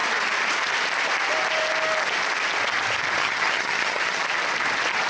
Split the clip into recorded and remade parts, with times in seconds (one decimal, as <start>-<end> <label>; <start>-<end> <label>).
0.0-3.2 recorded; 3.2-4.2 remade; 4.2-5.1 recorded